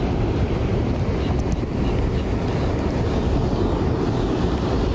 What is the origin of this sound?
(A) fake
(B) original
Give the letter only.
B